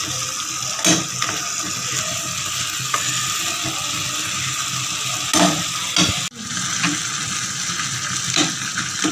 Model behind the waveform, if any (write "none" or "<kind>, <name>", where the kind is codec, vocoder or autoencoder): none